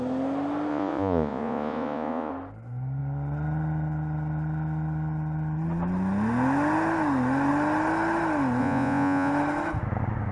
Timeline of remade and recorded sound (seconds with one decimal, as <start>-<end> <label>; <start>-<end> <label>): 0.0-0.7 recorded; 0.7-2.3 remade; 2.3-8.6 recorded; 8.6-9.3 remade; 9.3-10.3 recorded